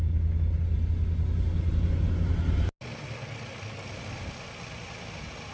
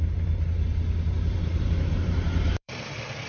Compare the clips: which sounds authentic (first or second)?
first